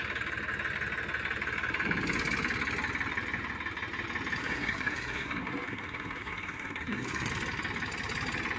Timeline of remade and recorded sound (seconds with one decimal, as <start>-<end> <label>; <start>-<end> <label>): 0.0-4.4 recorded; 4.4-7.3 remade; 7.3-8.6 recorded